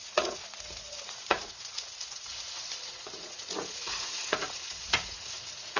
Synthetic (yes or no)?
yes